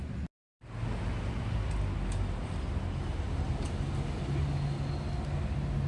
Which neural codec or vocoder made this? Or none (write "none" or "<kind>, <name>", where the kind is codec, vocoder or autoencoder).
none